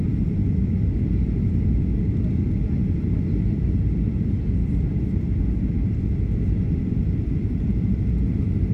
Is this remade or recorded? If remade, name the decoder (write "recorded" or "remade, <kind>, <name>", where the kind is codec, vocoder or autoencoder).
remade, vocoder, BigVGAN v2